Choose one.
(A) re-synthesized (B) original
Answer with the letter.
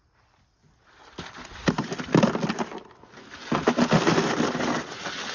B